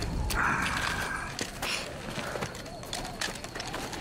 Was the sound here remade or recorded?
recorded